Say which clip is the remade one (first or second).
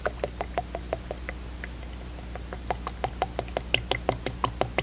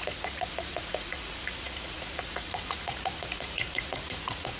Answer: second